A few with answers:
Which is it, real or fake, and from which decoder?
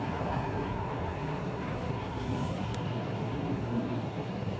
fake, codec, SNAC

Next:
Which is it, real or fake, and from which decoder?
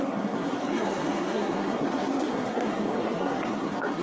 fake, codec, SNAC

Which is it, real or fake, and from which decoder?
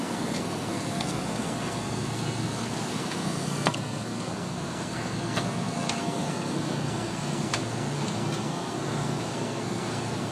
fake, codec, SNAC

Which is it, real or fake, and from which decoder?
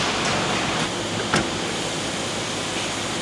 real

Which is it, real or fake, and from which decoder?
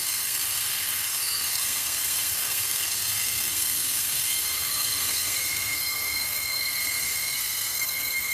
fake, codec, SNAC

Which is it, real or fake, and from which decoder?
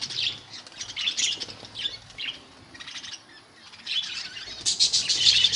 real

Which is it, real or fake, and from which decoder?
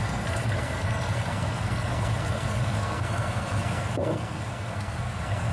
fake, codec, SNAC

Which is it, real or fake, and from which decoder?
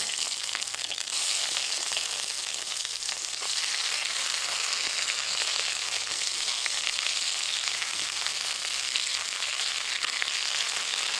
fake, codec, SNAC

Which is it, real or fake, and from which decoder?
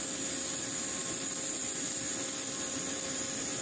real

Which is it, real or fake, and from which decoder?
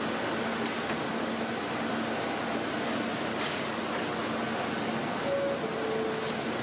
real